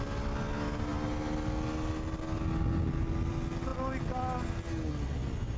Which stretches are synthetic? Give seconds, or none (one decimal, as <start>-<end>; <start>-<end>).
none